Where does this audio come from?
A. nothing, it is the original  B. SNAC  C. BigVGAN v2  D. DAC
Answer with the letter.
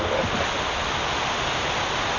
A